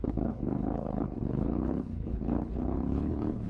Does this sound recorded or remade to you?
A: remade